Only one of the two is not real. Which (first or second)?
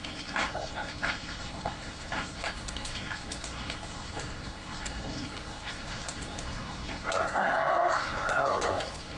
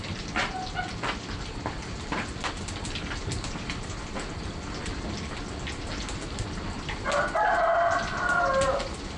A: first